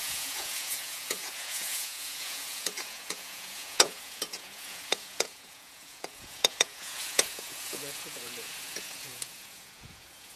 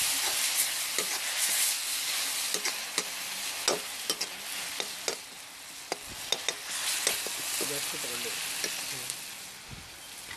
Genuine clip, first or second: second